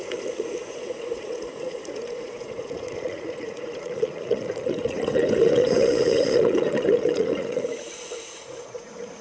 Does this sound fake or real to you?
fake